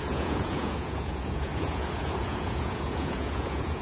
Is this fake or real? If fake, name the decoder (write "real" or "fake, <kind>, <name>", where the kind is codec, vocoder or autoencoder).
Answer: fake, vocoder, Vocos